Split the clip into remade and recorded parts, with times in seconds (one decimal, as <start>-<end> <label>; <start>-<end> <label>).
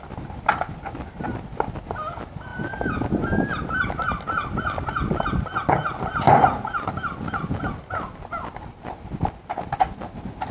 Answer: 0.0-10.5 recorded